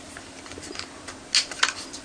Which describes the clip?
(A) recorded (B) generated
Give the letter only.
A